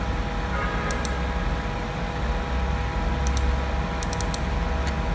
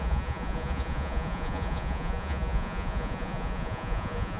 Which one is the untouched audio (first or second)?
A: first